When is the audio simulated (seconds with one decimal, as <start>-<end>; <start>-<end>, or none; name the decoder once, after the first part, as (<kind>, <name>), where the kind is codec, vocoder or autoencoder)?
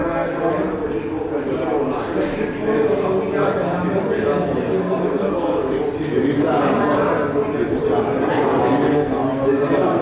0.0-0.5 (codec, SNAC); 4.8-5.7; 8.9-10.0